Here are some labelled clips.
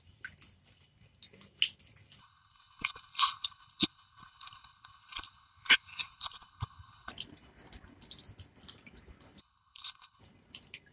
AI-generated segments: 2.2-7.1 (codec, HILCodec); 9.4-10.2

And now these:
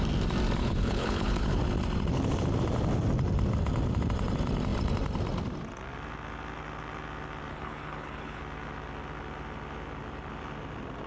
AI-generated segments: 0.6-1.6 (codec, HILCodec); 7.5-8.4

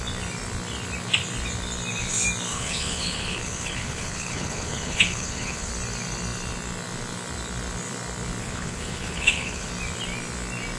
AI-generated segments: 2.5-5.7 (codec, HILCodec); 8.4-9.7

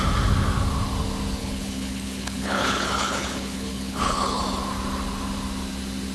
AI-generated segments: 1.4-4.4 (codec, HILCodec)

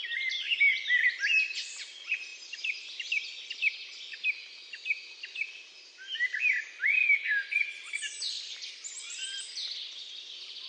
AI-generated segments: none

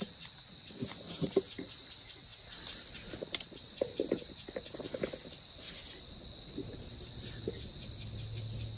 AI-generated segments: none

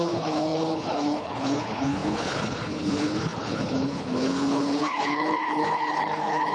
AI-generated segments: 0.0-6.5 (codec, HILCodec)